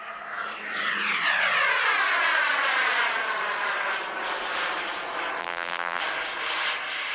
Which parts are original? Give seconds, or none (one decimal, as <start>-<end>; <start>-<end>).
0.0-5.4; 6.0-7.1